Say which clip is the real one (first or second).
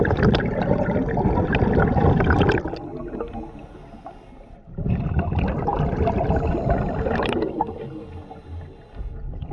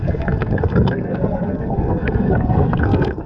first